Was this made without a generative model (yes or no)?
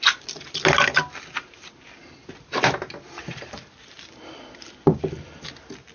yes